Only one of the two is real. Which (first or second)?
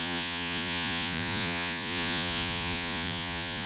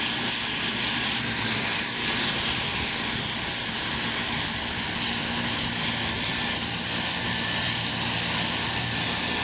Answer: second